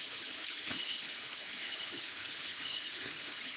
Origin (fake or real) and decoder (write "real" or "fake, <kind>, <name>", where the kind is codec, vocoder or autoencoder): fake, codec, HILCodec